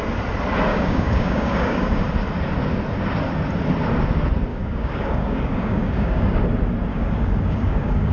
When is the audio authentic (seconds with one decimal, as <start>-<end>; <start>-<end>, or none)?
0.0-0.7; 2.0-4.5; 6.4-6.9